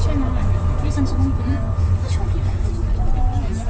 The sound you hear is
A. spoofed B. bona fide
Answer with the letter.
B